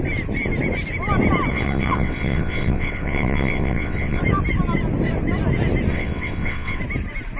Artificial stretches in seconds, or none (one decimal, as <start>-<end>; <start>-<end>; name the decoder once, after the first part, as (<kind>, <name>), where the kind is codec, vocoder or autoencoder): 1.5-4.2 (vocoder, WaveNeXt); 5.9-6.8